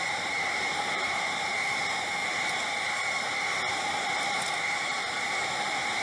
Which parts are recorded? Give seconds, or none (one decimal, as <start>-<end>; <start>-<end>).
0.0-6.0